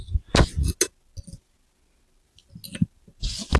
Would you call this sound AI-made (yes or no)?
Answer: no